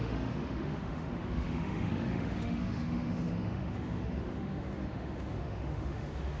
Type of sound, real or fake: fake